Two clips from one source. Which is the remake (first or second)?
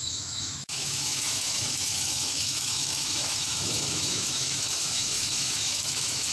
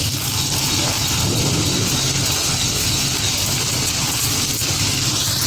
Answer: first